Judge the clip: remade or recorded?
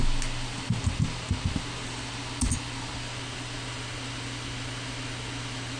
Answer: recorded